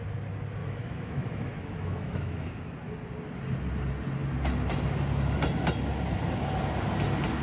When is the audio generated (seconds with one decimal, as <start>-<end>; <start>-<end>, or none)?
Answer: 0.6-2.6